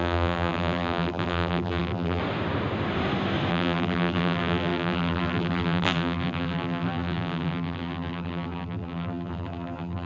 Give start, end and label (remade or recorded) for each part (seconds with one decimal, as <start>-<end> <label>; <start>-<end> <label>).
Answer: 0.0-2.2 remade; 2.2-3.5 recorded; 3.5-10.1 remade